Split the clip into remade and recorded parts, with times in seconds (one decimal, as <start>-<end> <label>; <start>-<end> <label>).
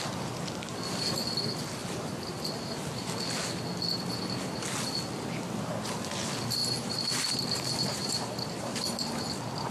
0.0-1.8 recorded; 1.8-2.3 remade; 2.3-6.6 recorded; 6.6-9.2 remade; 9.2-9.7 recorded